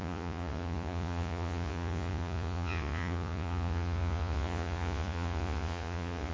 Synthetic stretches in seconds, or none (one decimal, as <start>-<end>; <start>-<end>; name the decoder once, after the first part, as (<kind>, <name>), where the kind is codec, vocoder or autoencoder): 0.0-6.3 (vocoder, Vocos)